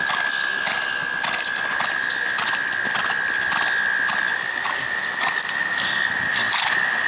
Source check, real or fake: real